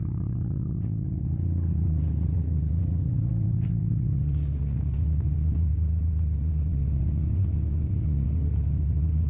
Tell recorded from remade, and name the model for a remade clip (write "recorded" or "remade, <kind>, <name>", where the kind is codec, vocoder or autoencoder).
remade, vocoder, WaveNeXt